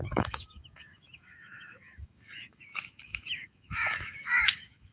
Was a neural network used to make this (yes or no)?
yes